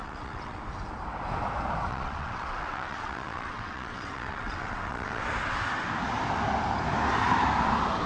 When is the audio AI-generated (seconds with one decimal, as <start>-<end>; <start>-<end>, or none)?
0.0-0.6; 1.9-5.2